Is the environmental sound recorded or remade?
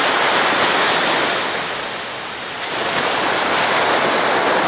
recorded